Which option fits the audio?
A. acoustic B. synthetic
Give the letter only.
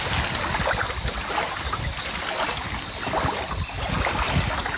A